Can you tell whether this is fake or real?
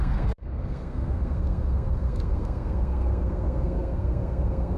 fake